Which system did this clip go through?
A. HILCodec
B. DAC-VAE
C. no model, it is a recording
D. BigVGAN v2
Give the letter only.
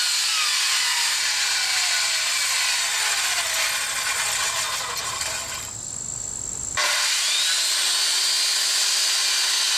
C